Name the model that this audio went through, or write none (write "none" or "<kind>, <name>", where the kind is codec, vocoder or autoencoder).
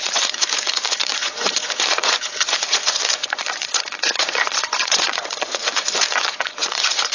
vocoder, Vocos